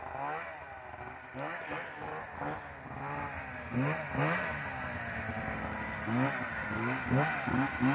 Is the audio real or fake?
real